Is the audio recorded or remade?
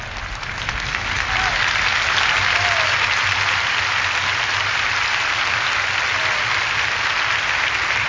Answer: recorded